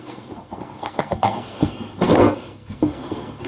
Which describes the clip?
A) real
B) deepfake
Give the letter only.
B